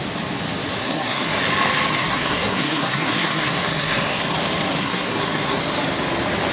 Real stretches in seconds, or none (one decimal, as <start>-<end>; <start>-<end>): 0.0-0.8; 1.4-2.0; 4.2-4.8; 5.6-6.5